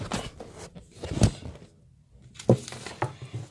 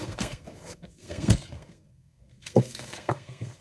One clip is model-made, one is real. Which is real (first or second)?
first